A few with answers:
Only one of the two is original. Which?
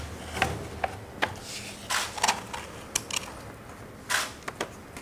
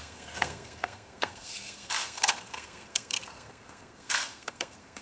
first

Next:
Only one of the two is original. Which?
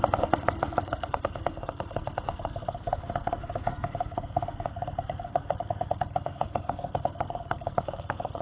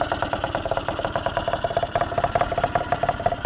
second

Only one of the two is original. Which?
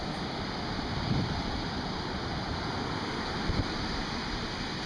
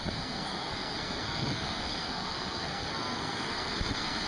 first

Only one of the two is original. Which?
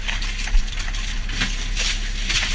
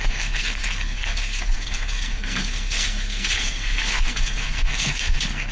first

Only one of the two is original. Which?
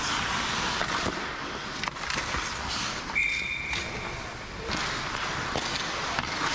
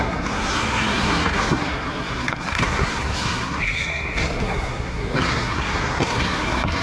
first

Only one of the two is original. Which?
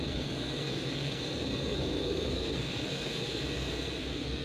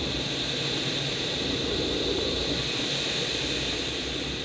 second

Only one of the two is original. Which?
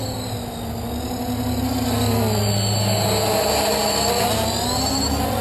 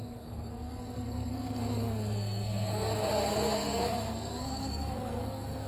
first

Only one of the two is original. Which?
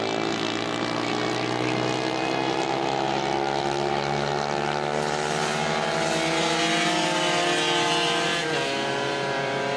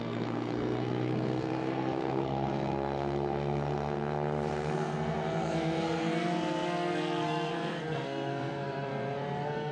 first